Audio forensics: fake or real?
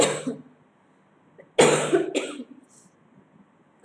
real